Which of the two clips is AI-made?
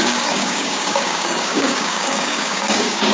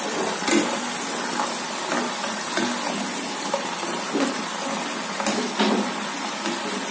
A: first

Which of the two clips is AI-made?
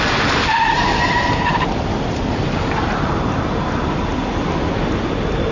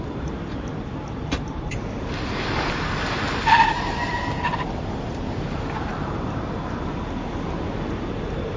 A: first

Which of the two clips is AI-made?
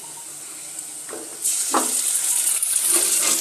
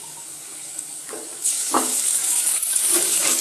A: second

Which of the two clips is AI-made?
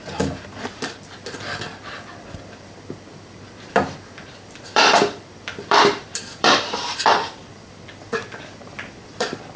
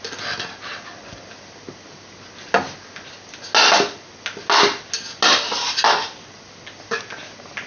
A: first